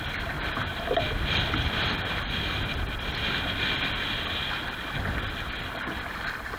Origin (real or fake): real